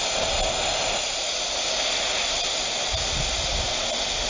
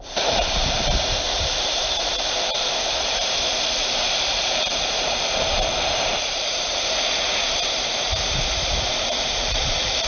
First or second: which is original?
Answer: first